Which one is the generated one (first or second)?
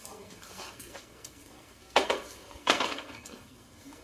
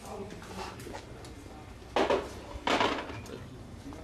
first